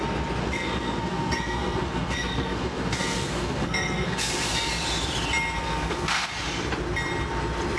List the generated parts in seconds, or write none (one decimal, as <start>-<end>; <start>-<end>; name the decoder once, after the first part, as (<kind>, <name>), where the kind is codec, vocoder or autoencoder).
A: 0.4-4.7 (codec, SNAC); 5.6-6.3